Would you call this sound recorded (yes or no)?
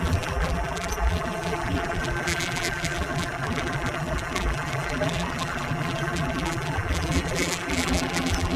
no